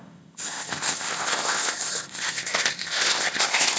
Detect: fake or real fake